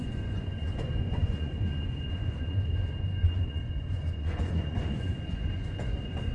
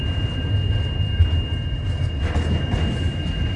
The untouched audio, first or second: second